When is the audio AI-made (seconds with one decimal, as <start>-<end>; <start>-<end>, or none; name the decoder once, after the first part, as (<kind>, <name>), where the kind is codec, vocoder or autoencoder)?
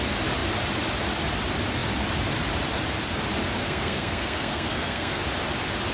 3.6-5.2 (codec, SNAC)